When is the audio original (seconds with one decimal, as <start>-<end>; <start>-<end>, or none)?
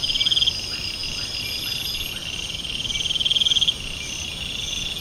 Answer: 0.0-5.0